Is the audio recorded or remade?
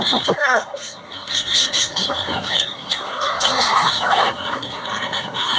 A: remade